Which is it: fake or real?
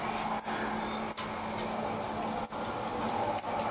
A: real